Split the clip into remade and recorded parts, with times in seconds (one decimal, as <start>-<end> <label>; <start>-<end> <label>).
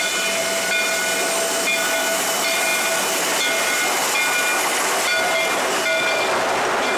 0.0-7.0 recorded